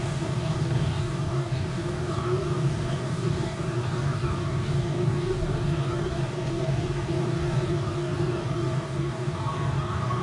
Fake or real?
fake